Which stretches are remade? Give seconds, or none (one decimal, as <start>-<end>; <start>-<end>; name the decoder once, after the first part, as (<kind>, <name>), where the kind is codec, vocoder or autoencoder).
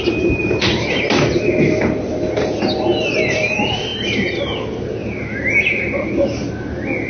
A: none